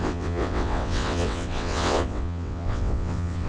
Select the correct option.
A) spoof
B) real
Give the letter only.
A